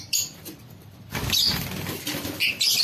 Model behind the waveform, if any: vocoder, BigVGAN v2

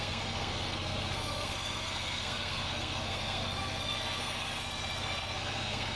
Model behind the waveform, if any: codec, SNAC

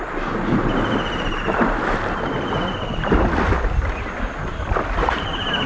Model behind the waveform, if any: none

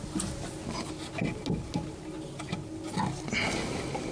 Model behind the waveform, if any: none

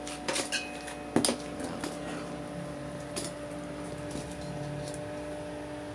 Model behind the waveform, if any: none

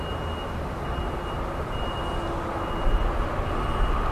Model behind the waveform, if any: none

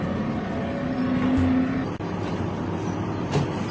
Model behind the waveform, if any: none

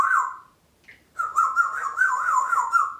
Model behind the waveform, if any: none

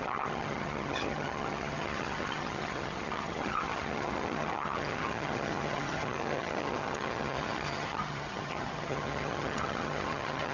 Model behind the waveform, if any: vocoder, HiFi-GAN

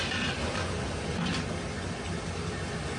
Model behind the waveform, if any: none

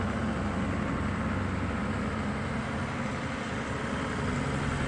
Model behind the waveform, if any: none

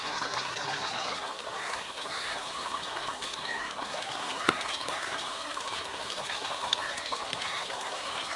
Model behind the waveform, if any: codec, SNAC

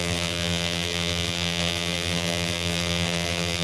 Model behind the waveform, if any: vocoder, BigVGAN v2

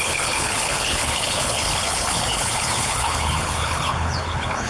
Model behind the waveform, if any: codec, HILCodec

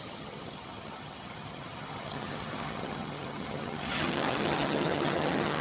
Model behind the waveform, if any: vocoder, HiFi-GAN